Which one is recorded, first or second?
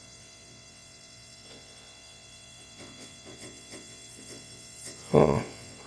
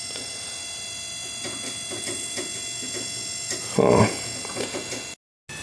second